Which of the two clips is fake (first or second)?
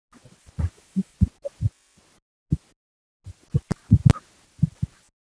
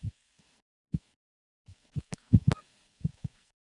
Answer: second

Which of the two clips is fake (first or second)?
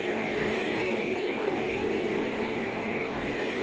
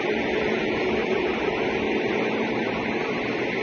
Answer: first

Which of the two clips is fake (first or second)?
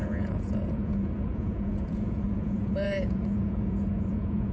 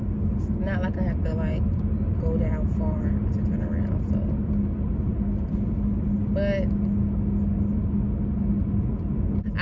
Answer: first